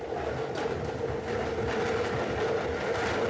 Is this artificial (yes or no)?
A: no